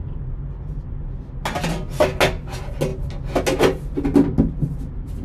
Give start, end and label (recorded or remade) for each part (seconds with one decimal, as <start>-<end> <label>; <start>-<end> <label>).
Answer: 0.0-5.2 recorded